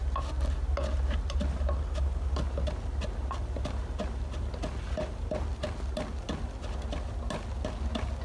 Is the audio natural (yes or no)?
yes